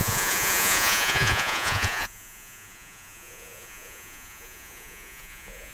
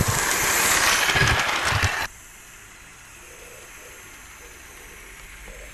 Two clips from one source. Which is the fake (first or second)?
first